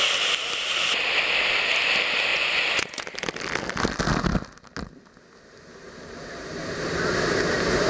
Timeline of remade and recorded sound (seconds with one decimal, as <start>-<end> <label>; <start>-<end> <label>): 0.0-2.3 recorded; 2.3-3.0 remade; 3.0-7.9 recorded